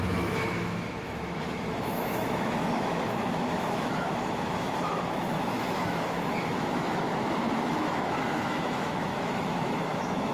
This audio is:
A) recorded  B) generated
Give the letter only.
B